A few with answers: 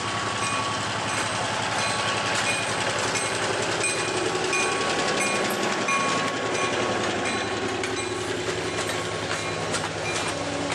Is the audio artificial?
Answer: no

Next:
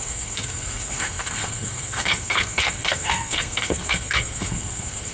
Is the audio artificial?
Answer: yes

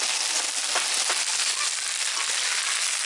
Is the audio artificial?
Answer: no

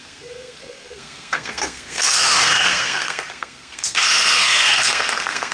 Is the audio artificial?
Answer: yes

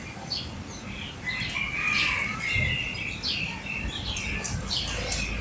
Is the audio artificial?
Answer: no